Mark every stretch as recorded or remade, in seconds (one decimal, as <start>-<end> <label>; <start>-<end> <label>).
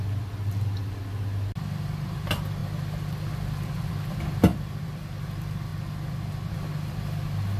0.0-4.5 recorded; 4.5-5.2 remade; 5.2-7.6 recorded